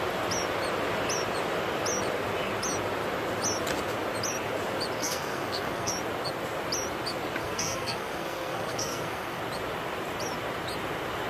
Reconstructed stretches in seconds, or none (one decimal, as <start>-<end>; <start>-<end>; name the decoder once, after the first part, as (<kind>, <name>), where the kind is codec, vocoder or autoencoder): 5.0-5.9 (codec, SNAC); 7.4-9.4